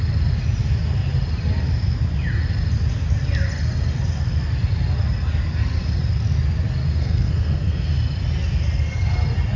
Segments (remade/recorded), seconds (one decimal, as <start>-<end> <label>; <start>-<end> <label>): 0.0-7.0 recorded; 7.0-7.9 remade; 7.9-9.6 recorded